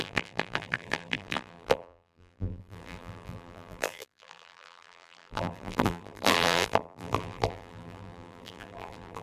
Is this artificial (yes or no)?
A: yes